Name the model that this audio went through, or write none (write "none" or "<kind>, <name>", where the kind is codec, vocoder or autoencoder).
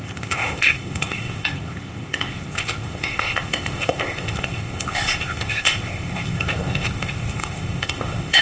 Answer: codec, ZipCodec